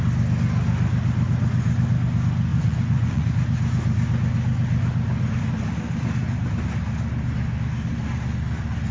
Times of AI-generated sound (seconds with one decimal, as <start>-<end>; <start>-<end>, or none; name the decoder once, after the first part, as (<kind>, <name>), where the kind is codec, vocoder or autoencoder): 2.5-3.3 (vocoder, Vocos)